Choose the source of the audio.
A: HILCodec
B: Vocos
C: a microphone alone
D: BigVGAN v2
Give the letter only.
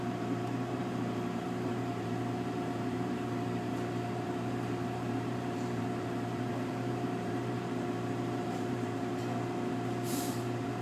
D